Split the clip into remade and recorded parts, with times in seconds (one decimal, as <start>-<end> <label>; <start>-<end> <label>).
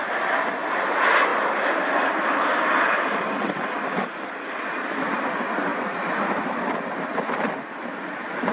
0.0-8.5 recorded